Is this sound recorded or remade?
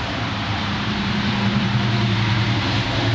remade